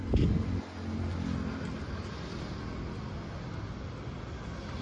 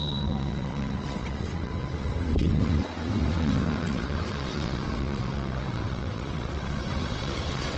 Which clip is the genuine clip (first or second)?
first